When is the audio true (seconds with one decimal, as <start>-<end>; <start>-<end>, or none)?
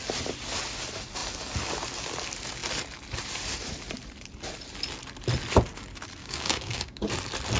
0.0-6.2; 7.0-7.6